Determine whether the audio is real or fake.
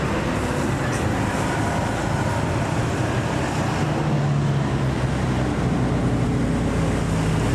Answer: real